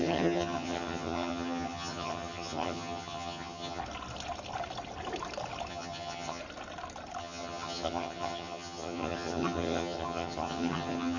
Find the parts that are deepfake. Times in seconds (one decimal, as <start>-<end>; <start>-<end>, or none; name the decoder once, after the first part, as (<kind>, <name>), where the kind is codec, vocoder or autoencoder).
0.0-3.8 (vocoder, HiFi-GAN); 5.7-6.4; 7.2-11.2